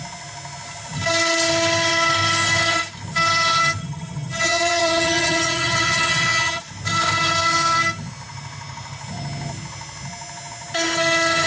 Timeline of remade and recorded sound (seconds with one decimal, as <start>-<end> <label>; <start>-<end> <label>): 0.0-3.8 recorded; 3.8-6.6 remade; 6.6-11.5 recorded